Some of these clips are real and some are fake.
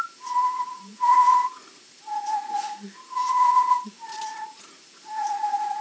fake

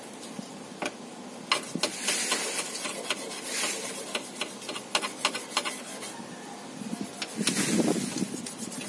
real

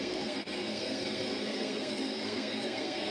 fake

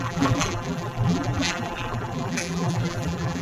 fake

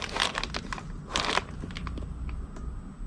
real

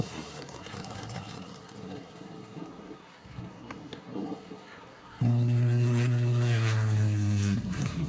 fake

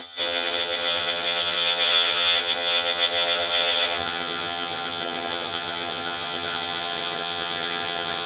fake